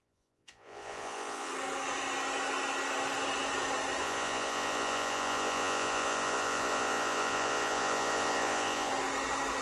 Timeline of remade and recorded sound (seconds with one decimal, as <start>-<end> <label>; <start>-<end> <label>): 0.0-1.5 remade; 1.5-4.0 recorded; 4.0-8.9 remade; 8.9-9.6 recorded